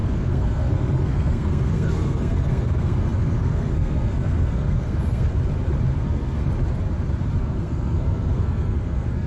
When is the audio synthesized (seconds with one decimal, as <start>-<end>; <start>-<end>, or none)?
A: 0.0-5.3; 5.9-6.5; 7.4-9.3